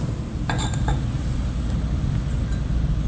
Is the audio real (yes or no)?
yes